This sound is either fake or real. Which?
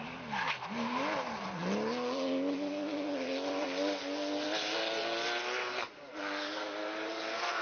real